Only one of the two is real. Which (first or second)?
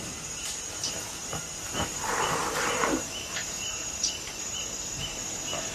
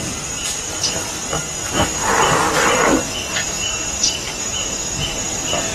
second